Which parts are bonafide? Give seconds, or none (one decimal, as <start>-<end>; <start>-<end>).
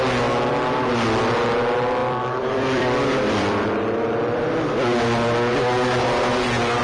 0.0-2.0; 4.4-6.8